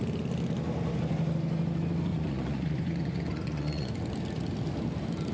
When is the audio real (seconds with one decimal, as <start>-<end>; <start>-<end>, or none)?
0.0-2.1; 3.9-5.3